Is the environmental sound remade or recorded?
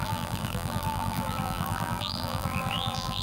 remade